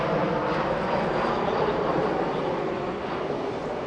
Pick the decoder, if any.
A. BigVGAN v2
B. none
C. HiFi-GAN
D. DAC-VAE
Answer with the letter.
B